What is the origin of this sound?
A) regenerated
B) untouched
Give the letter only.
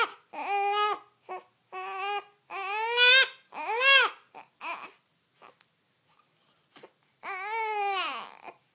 B